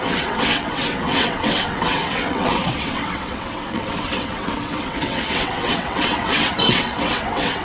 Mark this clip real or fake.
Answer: fake